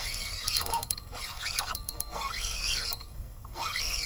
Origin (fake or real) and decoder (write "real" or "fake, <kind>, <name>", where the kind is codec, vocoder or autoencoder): fake, codec, SNAC